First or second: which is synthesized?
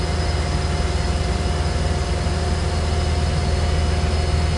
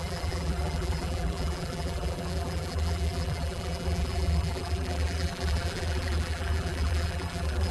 second